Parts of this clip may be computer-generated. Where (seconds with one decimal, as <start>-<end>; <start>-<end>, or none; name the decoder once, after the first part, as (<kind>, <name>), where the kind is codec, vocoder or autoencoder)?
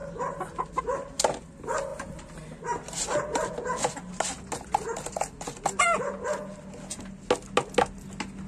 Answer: none